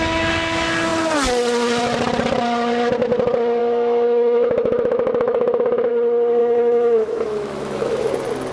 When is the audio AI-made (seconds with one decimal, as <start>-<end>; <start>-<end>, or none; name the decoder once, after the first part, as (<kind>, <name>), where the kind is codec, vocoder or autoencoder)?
3.6-5.9 (autoencoder, DAC-VAE); 6.4-8.1